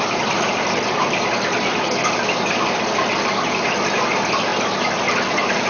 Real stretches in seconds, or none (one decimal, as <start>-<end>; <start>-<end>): 0.0-5.7